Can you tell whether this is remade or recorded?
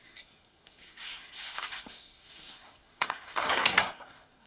remade